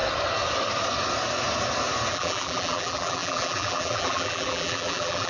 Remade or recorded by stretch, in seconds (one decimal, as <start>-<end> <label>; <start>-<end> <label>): 0.0-2.1 recorded; 2.1-5.3 remade